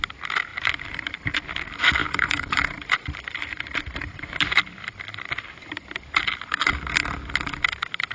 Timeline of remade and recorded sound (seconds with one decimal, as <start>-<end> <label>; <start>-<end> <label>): 0.0-0.5 recorded; 0.5-1.4 remade; 1.4-2.0 recorded; 2.0-4.3 remade; 4.3-8.1 recorded